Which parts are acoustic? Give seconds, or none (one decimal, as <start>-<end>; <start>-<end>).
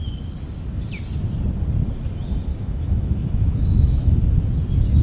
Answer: 0.0-2.5; 4.1-5.0